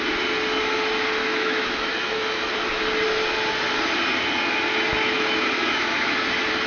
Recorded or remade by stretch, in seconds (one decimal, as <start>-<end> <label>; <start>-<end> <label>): 0.0-1.2 recorded; 1.2-2.5 remade; 2.5-4.9 recorded; 4.9-6.1 remade; 6.1-6.7 recorded